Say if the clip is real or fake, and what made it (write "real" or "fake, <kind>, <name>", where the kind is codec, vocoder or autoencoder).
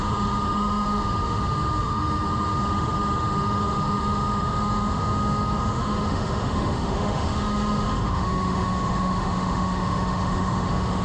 fake, autoencoder, DAC-VAE